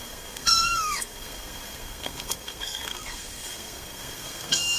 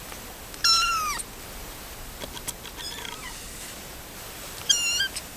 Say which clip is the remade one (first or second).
first